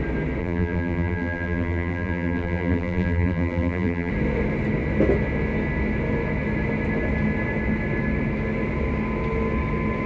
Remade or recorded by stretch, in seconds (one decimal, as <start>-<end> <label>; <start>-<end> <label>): 0.0-0.4 recorded; 0.4-4.1 remade; 4.1-10.1 recorded